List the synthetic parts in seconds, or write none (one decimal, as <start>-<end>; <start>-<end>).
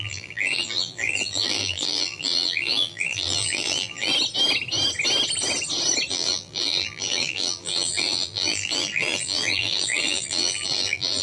0.0-4.1; 6.1-11.2